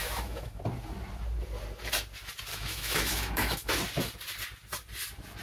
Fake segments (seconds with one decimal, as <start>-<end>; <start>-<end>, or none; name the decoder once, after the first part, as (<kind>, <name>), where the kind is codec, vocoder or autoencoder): 0.0-0.6 (autoencoder, DAC-VAE); 2.5-3.7